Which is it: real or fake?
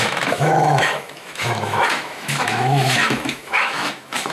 fake